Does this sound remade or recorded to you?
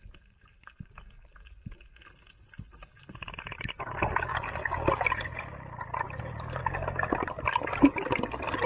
recorded